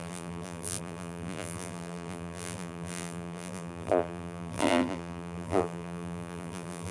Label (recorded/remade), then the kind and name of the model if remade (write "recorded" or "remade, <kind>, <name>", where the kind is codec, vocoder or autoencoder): remade, vocoder, BigVGAN v2